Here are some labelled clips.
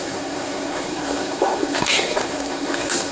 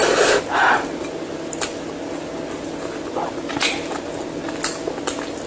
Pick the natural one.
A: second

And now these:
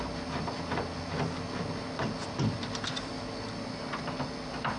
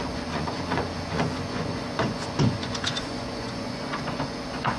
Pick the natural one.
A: first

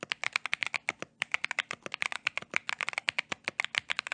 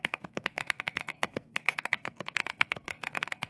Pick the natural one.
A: first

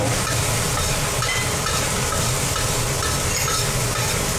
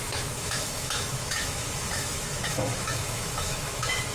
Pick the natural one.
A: first